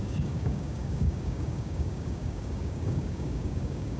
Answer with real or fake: fake